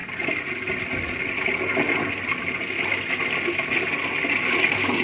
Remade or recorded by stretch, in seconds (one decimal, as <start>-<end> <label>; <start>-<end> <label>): 0.0-5.0 recorded